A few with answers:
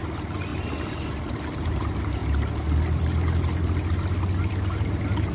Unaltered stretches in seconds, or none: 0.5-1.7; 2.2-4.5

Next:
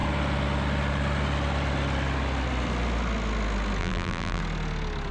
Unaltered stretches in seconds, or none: 0.0-3.8; 4.4-5.1